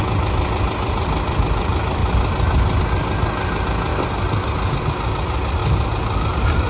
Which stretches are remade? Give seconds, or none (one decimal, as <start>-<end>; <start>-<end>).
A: none